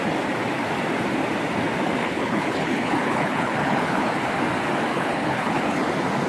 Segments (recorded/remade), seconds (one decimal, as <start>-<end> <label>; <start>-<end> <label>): 0.0-2.0 recorded; 2.0-4.2 remade; 4.2-4.9 recorded; 4.9-5.8 remade; 5.8-6.3 recorded